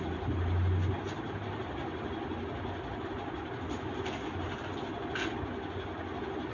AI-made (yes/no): no